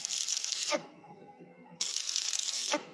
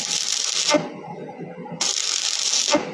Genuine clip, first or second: second